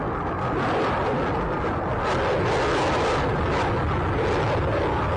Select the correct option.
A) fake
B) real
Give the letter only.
B